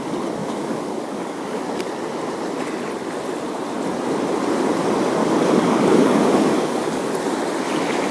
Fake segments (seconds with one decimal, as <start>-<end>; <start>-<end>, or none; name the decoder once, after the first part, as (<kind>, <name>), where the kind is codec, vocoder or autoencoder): 0.4-1.6 (codec, DAC); 5.2-7.1